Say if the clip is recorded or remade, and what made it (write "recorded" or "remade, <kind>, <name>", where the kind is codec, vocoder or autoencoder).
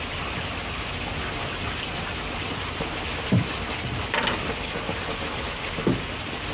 recorded